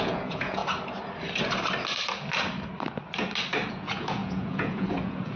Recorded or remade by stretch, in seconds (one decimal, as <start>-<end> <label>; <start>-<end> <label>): 0.0-0.6 remade; 0.6-3.7 recorded; 3.7-5.4 remade